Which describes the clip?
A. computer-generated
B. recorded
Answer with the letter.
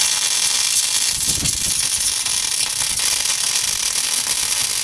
B